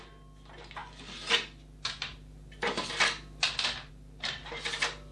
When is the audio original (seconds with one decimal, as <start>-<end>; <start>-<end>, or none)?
0.0-5.1